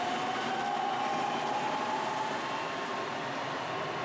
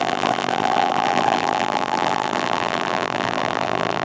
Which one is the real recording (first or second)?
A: first